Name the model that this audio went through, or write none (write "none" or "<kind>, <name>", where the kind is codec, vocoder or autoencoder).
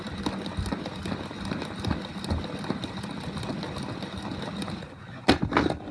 none